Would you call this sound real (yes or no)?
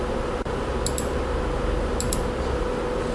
yes